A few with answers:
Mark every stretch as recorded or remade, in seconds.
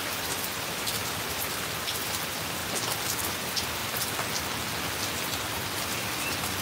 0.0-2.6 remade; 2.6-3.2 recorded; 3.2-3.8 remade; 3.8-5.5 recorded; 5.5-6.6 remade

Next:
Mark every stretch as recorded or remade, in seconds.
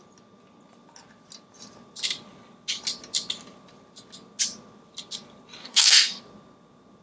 0.0-5.6 recorded; 5.6-6.2 remade; 6.2-7.0 recorded